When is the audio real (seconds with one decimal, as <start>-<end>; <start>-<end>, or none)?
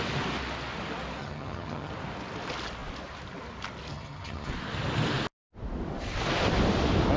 0.0-1.2; 1.9-3.9; 4.5-7.2